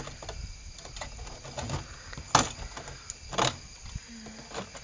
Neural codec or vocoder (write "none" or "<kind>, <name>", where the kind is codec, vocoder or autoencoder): none